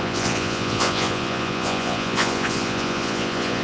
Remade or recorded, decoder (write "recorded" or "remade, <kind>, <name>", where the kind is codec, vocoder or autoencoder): remade, vocoder, Vocos